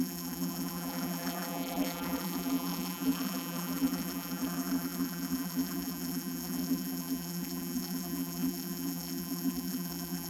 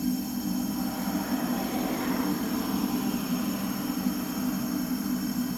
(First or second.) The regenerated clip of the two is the first